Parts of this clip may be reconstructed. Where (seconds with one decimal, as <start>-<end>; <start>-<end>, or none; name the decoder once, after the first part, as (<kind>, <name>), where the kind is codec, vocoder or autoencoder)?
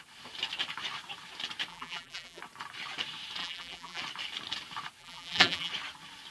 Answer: 1.7-2.4 (vocoder, BigVGAN v2); 3.4-4.0; 5.0-5.7